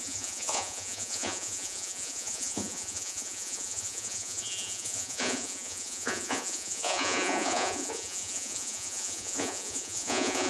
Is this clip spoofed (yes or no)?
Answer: yes